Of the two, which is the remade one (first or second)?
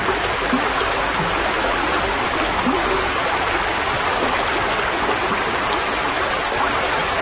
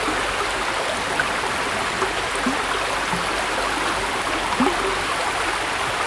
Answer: first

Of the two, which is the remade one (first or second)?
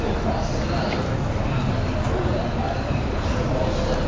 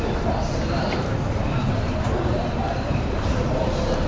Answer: second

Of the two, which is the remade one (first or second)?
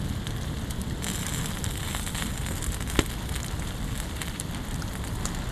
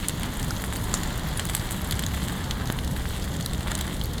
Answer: first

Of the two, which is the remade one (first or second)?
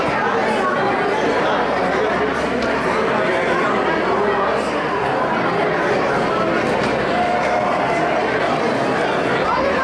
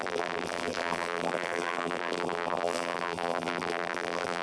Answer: second